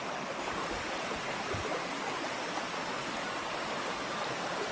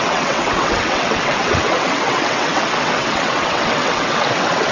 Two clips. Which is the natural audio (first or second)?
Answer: first